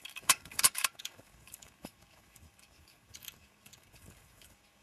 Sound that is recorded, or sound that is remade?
remade